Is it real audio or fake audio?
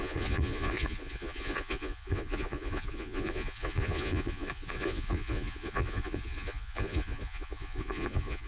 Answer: fake